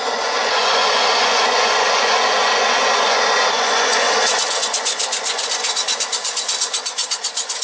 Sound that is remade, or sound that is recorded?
remade